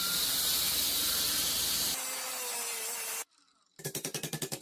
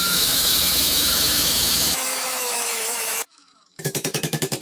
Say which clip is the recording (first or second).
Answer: first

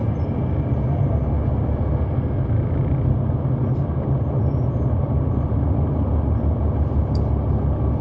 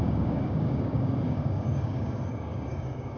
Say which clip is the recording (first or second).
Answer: first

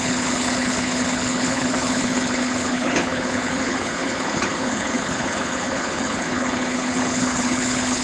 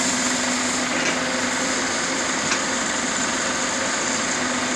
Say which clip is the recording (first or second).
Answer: second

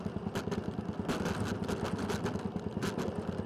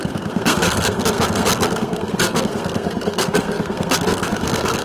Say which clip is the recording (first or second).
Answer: first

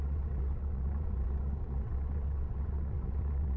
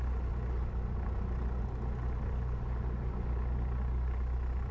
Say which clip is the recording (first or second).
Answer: second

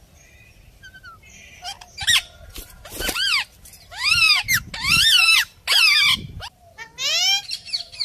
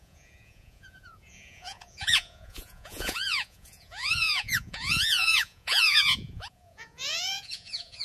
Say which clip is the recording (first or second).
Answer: first